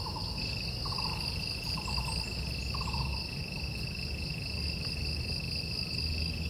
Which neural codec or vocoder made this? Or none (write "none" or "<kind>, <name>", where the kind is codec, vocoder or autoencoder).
none